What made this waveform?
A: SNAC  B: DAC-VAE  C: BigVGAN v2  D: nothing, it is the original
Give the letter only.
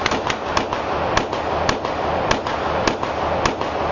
D